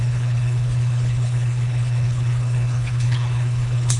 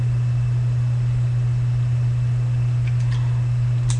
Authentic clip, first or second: second